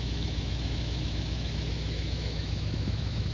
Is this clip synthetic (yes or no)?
yes